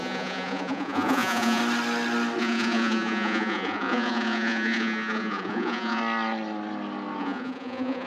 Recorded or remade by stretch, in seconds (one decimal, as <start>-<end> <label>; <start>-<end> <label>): 0.0-1.6 remade; 1.6-2.4 recorded; 2.4-6.0 remade; 6.0-7.2 recorded; 7.2-8.1 remade